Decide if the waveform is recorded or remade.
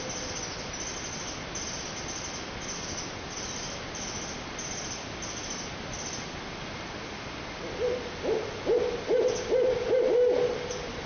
recorded